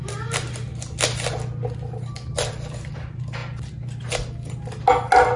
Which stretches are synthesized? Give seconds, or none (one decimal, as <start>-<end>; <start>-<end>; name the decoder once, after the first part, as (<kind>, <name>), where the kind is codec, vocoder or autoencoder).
none